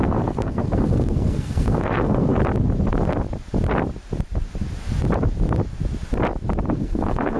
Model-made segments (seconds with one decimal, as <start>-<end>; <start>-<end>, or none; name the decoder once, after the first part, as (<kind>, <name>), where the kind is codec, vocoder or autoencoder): 0.0-2.4 (codec, SNAC); 6.7-7.4